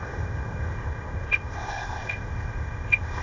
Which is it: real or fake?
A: fake